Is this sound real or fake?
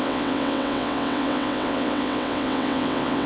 fake